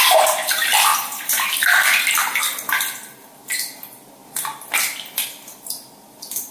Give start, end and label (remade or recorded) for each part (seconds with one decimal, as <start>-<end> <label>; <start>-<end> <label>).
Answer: 0.0-6.5 recorded